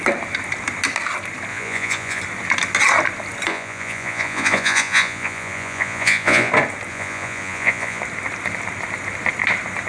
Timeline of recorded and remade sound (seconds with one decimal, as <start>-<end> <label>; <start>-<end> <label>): 0.0-1.5 recorded; 1.5-2.2 remade; 2.2-3.5 recorded; 3.5-6.5 remade; 6.5-6.9 recorded; 6.9-8.0 remade; 8.0-9.9 recorded